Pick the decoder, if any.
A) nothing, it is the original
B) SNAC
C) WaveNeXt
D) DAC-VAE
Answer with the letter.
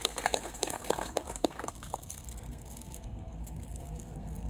B